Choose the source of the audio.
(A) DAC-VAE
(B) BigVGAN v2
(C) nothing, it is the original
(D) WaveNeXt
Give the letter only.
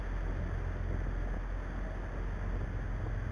C